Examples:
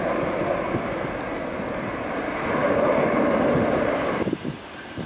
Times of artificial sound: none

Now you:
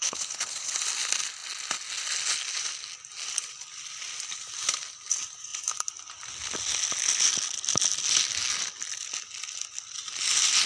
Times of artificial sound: 0.0-0.7 (codec, HILCodec)

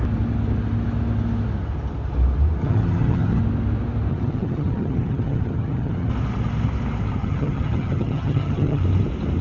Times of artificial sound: 2.6-3.4 (vocoder, HiFi-GAN); 4.1-6.1; 7.2-8.8